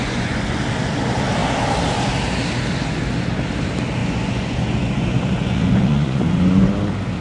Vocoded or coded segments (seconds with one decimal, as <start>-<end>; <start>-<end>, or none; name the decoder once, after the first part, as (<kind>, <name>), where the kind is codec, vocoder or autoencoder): 0.0-0.6 (vocoder, Vocos); 4.0-6.7